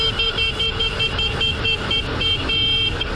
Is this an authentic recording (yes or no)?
no